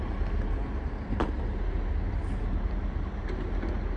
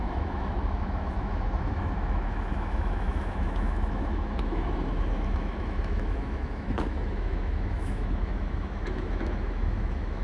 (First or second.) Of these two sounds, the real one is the first